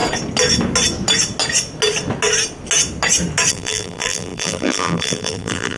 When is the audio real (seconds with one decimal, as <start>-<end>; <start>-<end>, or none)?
0.0-3.5